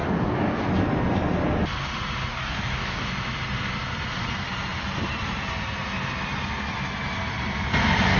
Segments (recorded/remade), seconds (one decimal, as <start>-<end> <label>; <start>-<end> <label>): 0.0-0.7 remade; 0.7-2.3 recorded; 2.3-3.0 remade; 3.0-8.2 recorded